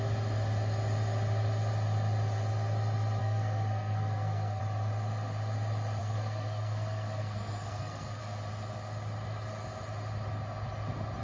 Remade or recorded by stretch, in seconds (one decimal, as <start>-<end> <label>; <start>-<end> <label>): 0.0-3.2 recorded; 3.2-4.6 remade; 4.6-6.0 recorded; 6.0-8.2 remade; 8.2-11.2 recorded